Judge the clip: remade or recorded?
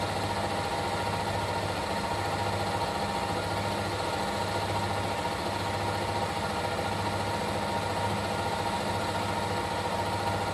recorded